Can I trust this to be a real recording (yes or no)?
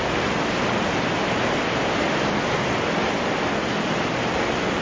yes